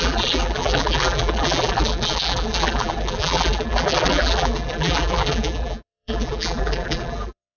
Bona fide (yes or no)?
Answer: no